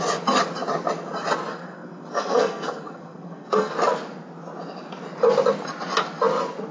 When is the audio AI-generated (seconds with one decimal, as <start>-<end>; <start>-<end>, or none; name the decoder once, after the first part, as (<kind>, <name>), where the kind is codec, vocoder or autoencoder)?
1.5-3.7 (codec, SNAC)